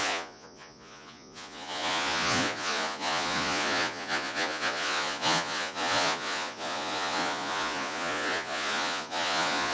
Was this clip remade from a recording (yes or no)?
yes